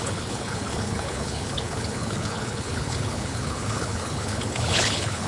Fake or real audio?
fake